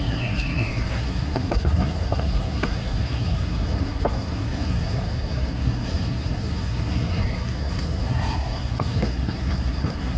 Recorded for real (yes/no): no